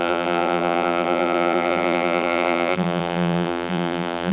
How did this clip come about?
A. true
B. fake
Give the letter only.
B